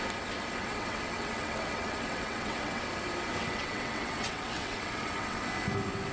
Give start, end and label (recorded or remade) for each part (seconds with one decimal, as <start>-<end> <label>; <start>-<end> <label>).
0.0-0.6 recorded; 0.6-2.8 remade; 2.8-3.4 recorded; 3.4-5.4 remade; 5.4-6.1 recorded